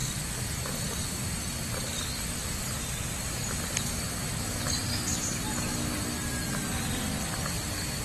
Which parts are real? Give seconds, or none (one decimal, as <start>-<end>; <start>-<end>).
0.0-8.0